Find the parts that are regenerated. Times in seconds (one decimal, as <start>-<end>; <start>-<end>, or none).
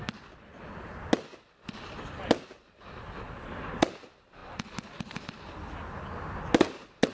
none